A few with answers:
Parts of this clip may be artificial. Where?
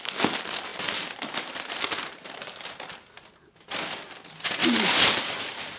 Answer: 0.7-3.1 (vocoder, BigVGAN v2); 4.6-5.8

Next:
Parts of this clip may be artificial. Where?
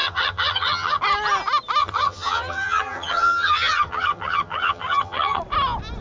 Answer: 0.0-1.0 (vocoder, HiFi-GAN); 1.8-5.4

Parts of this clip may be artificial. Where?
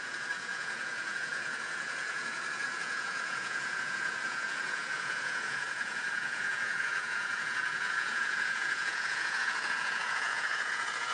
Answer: 0.0-11.1 (vocoder, Vocos)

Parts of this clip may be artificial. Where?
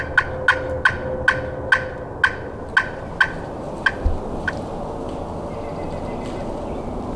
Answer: none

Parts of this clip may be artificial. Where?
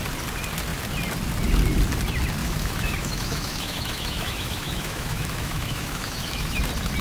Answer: 2.4-6.6 (autoencoder, DAC-VAE)